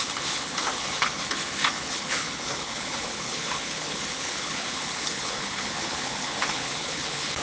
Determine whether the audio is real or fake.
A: fake